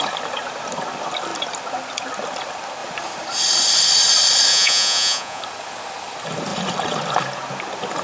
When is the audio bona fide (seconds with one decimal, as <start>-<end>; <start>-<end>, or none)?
0.0-4.5; 5.4-8.0